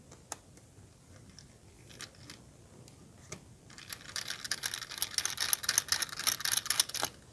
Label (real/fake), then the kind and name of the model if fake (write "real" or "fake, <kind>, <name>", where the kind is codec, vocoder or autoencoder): real